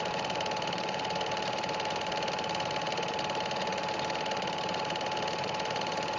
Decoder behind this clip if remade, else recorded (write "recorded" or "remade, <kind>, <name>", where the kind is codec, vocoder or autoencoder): remade, vocoder, BigVGAN v2